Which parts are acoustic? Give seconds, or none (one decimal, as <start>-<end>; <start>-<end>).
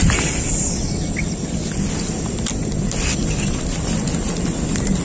0.0-5.0